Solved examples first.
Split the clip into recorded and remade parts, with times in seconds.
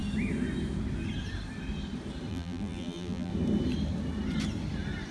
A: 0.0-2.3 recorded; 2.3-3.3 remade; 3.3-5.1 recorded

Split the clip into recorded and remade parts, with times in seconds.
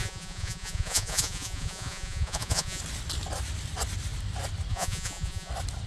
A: 0.0-2.8 remade; 2.8-4.7 recorded; 4.7-5.5 remade; 5.5-5.9 recorded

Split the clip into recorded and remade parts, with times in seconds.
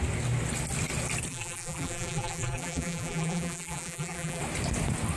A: 0.0-1.3 recorded; 1.3-4.4 remade; 4.4-5.2 recorded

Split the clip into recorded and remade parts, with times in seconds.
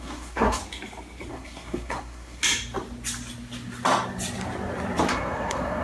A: 0.0-0.6 remade; 0.6-1.3 recorded; 1.3-2.4 remade; 2.4-5.1 recorded; 5.1-5.8 remade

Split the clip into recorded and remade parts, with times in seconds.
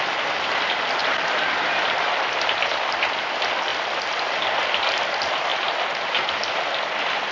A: 0.0-5.5 remade; 5.5-6.4 recorded; 6.4-7.3 remade